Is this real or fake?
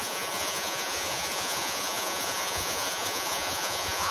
fake